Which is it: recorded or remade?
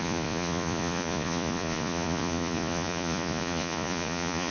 remade